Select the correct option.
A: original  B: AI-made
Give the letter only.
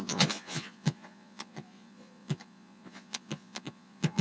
B